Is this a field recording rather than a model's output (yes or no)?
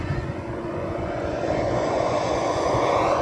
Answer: no